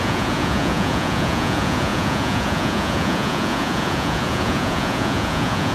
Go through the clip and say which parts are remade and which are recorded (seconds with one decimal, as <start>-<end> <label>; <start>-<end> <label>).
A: 0.0-5.7 remade